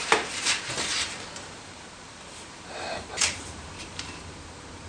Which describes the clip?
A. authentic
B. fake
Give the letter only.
B